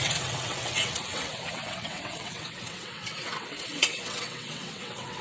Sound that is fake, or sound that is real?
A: fake